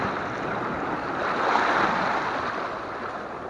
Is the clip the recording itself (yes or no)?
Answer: yes